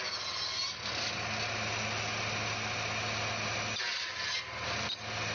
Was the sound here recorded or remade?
recorded